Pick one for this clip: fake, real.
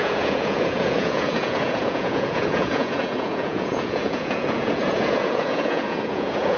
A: fake